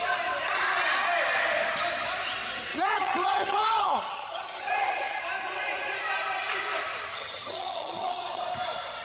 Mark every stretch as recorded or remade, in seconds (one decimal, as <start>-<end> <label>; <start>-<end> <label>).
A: 0.0-2.7 recorded; 2.7-5.2 remade; 5.2-7.1 recorded; 7.1-8.4 remade; 8.4-9.0 recorded